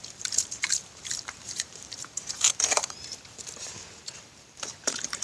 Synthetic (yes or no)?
yes